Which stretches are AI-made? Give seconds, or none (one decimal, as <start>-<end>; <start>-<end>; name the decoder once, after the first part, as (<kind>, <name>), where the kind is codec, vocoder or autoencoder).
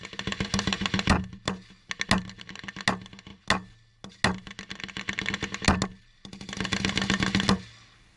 none